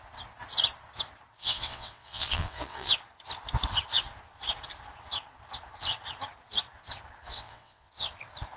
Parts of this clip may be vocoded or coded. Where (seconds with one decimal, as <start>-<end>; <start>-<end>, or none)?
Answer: 1.4-2.9; 7.3-7.9